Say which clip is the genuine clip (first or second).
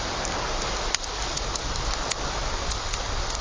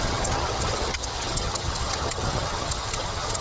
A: first